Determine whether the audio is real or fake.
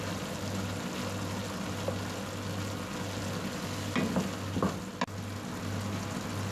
real